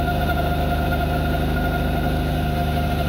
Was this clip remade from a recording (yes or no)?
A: no